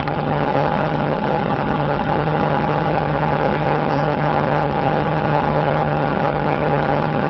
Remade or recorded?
remade